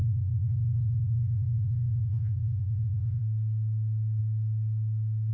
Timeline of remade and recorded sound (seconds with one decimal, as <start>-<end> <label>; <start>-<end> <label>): 0.0-3.2 remade; 3.2-5.3 recorded